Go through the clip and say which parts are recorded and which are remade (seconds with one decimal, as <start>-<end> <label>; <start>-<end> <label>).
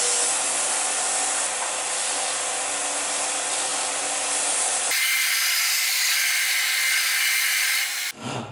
0.0-3.7 recorded; 3.7-4.5 remade; 4.5-8.5 recorded